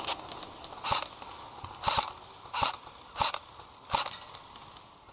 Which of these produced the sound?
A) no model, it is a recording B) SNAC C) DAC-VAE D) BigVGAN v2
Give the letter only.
A